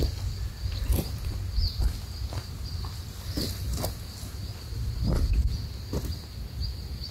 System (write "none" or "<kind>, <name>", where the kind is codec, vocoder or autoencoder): none